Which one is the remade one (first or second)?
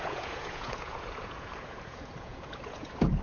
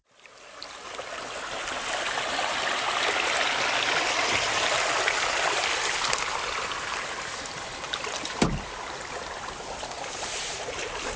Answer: first